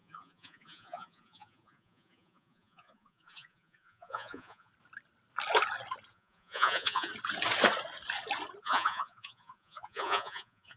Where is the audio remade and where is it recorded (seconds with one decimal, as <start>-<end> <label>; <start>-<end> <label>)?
0.0-4.7 remade; 4.7-6.1 recorded; 6.1-7.1 remade; 7.1-8.6 recorded; 8.6-10.8 remade